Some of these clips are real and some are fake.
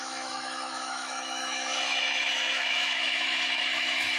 fake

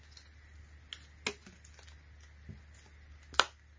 real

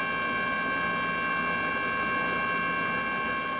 real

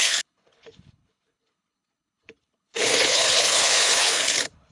fake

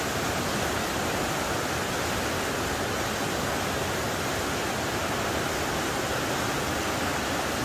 real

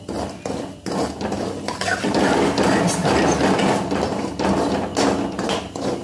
real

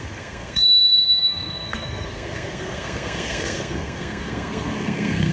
fake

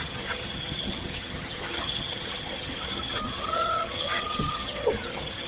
fake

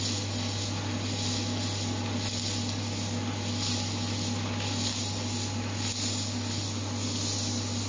real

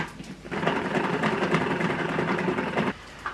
real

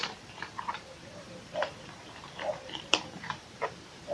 fake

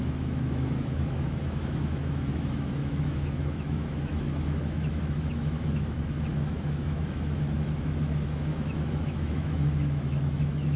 fake